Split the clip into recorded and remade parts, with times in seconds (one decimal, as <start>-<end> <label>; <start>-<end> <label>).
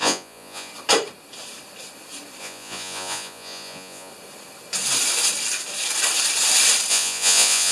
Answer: 0.0-0.7 remade; 0.7-2.4 recorded; 2.4-4.1 remade; 4.1-6.9 recorded; 6.9-7.7 remade